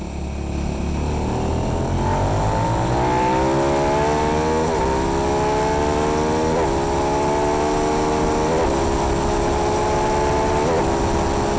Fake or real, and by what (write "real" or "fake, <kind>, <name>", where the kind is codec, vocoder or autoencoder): real